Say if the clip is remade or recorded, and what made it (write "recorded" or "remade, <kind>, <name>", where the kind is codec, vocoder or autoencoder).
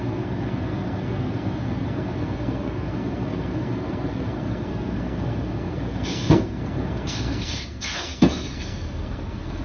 remade, codec, SNAC